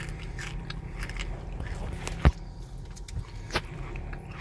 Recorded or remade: recorded